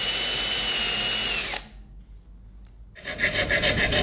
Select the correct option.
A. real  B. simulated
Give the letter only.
A